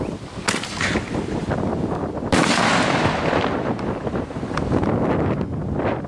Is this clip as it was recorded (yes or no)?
yes